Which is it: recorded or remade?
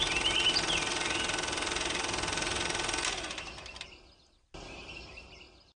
recorded